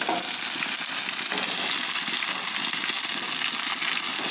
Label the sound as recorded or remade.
recorded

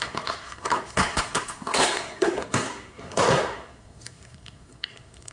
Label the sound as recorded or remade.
remade